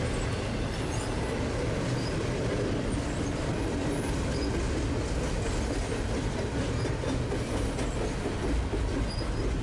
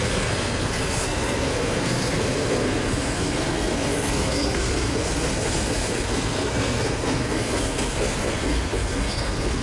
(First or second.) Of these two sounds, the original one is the first